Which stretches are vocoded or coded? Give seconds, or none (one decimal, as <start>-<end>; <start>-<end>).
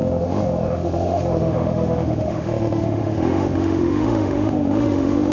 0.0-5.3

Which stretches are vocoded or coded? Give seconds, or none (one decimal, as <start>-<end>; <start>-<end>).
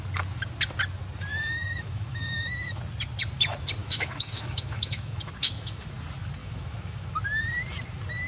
1.3-2.8; 3.8-5.8; 6.4-7.1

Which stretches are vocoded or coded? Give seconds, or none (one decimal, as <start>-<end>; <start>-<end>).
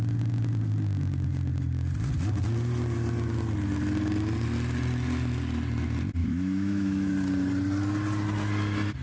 6.2-7.1